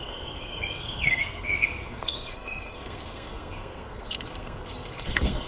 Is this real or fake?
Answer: fake